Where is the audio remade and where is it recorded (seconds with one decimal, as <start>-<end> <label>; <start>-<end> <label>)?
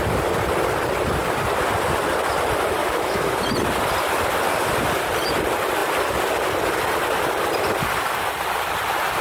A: 0.0-2.8 recorded; 2.8-3.3 remade; 3.3-9.2 recorded